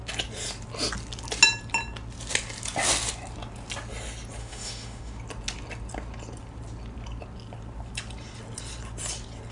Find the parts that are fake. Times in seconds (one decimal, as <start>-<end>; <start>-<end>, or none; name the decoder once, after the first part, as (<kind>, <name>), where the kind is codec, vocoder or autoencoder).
4.4-5.2 (autoencoder, DAC-VAE)